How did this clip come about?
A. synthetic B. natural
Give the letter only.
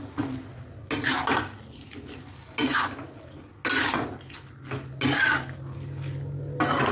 B